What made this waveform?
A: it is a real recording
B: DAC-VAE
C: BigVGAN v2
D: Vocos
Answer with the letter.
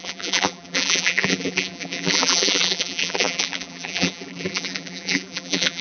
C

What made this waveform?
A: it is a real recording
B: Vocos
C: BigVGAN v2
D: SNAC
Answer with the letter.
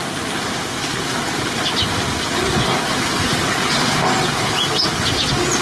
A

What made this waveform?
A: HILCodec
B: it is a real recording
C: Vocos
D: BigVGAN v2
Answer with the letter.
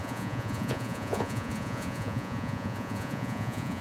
C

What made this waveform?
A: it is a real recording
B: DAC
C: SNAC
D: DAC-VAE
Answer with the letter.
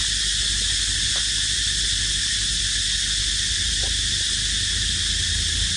A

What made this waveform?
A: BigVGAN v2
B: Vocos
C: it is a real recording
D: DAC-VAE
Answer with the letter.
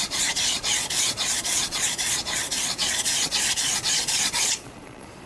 B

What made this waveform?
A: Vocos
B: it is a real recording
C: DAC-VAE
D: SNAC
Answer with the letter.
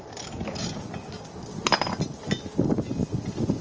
B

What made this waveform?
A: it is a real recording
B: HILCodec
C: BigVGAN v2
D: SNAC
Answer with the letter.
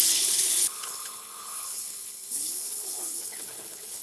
B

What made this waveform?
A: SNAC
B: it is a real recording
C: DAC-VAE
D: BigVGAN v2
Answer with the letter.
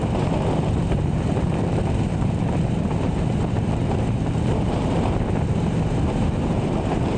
D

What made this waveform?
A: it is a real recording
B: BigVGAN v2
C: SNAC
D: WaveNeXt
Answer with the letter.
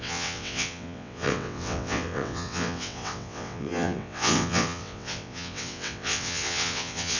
D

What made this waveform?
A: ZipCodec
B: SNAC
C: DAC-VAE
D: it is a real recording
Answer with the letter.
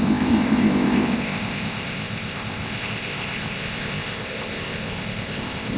A